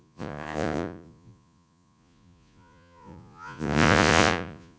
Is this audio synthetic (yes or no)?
yes